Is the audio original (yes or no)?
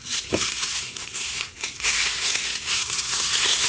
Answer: no